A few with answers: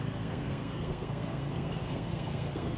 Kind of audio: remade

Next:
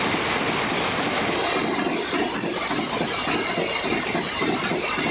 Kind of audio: recorded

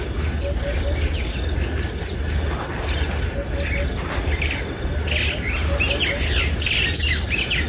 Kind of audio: recorded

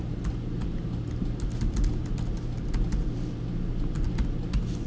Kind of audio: recorded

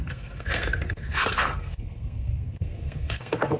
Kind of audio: remade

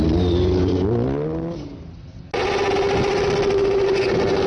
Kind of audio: recorded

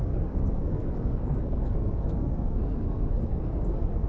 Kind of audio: remade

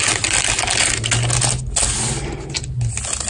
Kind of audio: recorded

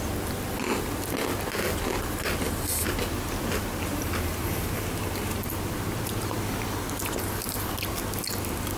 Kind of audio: recorded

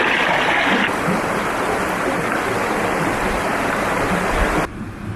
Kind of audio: recorded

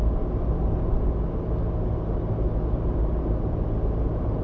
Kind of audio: recorded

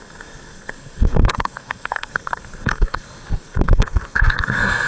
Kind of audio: remade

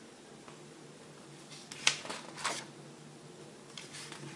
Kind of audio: recorded